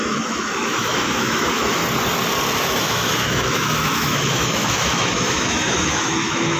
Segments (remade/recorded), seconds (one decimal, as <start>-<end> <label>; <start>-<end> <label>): 0.0-1.8 remade; 1.8-2.6 recorded; 2.6-6.6 remade